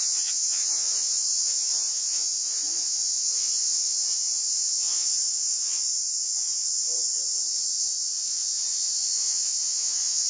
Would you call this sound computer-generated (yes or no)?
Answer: yes